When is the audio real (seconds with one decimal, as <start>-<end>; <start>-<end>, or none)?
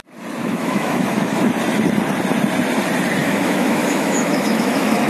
0.0-0.4; 1.5-3.2